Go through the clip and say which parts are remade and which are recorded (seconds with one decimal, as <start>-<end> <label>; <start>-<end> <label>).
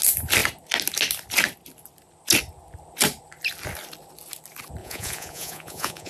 0.0-4.8 recorded; 4.8-6.1 remade